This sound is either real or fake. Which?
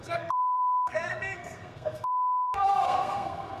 fake